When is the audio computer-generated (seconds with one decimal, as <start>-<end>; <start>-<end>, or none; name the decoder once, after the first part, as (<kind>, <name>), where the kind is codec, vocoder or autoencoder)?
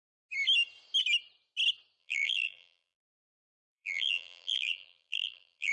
2.0-5.7 (vocoder, BigVGAN v2)